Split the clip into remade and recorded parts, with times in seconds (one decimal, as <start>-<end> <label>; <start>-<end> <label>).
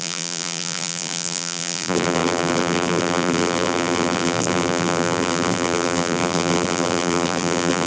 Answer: 0.0-7.9 remade